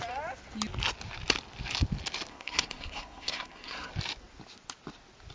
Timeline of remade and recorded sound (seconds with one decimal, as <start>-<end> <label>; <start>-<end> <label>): 0.0-2.3 recorded; 2.3-3.9 remade; 3.9-5.3 recorded